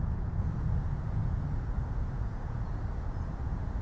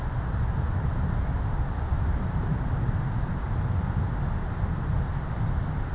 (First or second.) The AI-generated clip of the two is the first